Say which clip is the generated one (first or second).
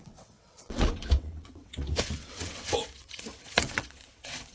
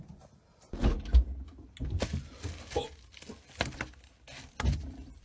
first